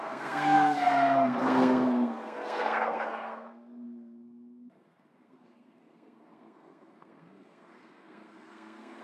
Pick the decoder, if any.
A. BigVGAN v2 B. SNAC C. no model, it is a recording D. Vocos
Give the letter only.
B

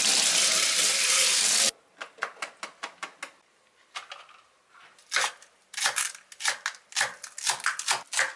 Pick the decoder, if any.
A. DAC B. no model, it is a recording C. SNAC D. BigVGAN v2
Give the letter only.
B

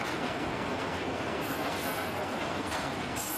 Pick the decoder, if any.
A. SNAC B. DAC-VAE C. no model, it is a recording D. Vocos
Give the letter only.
A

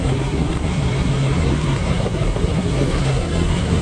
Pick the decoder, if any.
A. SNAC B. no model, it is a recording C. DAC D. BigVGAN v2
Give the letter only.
A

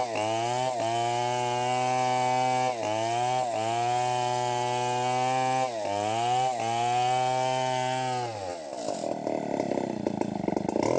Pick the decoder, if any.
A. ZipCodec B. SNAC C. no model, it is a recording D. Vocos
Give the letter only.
C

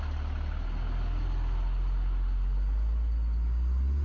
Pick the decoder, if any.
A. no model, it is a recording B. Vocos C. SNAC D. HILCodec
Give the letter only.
A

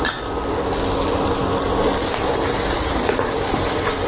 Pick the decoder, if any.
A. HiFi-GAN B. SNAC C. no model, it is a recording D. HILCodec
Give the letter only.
C